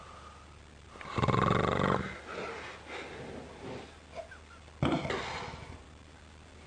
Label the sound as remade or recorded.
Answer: recorded